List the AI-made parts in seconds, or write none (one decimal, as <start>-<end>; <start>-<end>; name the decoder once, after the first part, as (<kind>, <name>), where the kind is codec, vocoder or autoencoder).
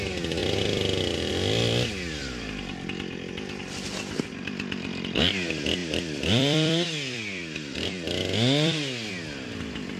0.4-1.3 (vocoder, BigVGAN v2); 5.8-9.1